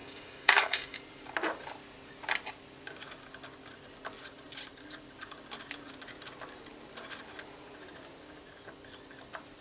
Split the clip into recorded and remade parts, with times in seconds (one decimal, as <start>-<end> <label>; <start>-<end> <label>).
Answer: 0.0-1.0 remade; 1.0-9.6 recorded